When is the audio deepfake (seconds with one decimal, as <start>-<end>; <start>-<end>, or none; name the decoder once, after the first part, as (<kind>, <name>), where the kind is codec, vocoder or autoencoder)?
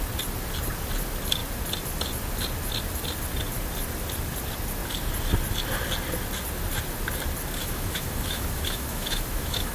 7.6-9.7 (autoencoder, DAC-VAE)